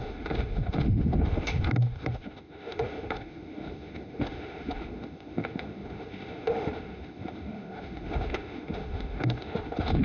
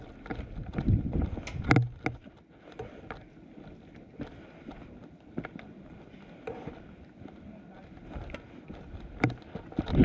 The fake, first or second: first